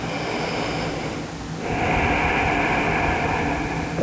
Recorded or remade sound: recorded